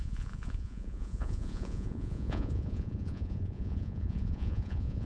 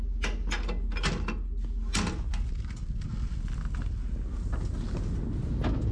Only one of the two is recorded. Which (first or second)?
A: second